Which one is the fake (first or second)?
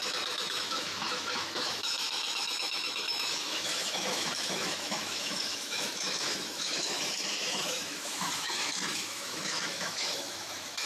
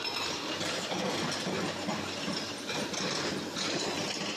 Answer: first